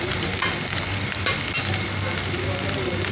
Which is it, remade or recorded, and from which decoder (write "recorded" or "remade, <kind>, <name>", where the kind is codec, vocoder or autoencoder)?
recorded